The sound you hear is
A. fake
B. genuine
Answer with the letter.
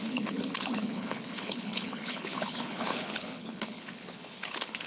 A